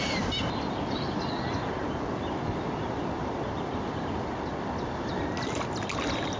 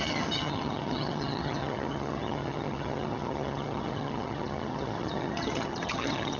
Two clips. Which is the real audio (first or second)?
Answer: first